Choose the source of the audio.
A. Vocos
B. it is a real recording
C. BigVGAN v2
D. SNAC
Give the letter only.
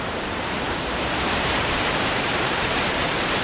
C